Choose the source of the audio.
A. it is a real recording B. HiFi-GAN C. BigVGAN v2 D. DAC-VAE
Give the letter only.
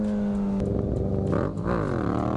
A